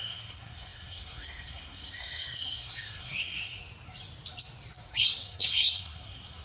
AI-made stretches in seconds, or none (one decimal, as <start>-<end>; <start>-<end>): 0.0-3.6; 4.9-6.4

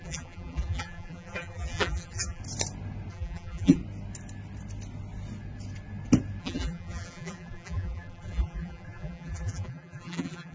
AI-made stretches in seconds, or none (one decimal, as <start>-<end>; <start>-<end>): 0.0-2.4; 3.1-3.8; 6.4-10.5

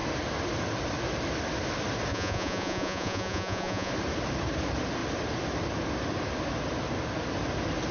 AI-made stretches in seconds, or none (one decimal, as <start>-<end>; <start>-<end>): 2.1-3.9